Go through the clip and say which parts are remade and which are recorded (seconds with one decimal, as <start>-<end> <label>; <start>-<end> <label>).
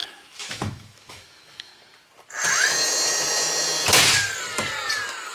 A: 0.0-1.7 remade; 1.7-5.3 recorded